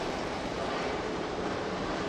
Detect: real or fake fake